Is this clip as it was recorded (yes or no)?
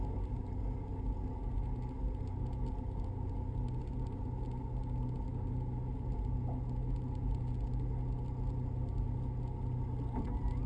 yes